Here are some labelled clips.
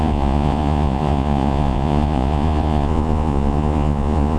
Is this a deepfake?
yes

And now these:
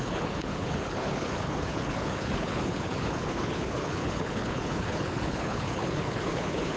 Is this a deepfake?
yes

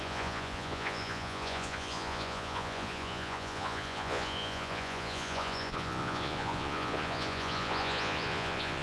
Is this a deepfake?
yes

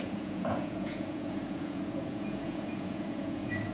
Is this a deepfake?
yes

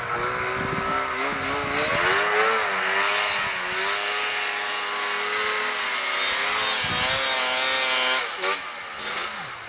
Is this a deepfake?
no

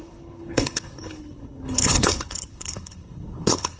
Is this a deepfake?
yes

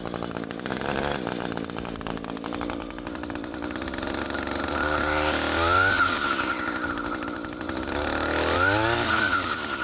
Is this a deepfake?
no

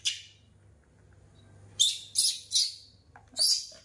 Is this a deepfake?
no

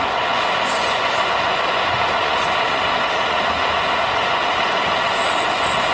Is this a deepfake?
yes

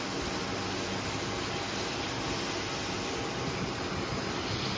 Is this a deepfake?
no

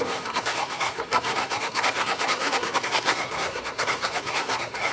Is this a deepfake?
yes